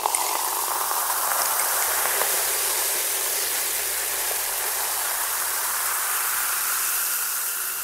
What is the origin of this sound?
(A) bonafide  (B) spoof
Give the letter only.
B